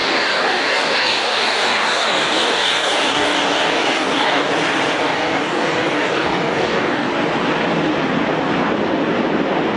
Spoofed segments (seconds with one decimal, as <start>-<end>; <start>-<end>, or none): 0.0-4.5; 5.0-7.1